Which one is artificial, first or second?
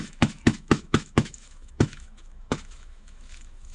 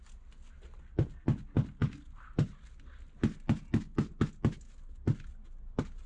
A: first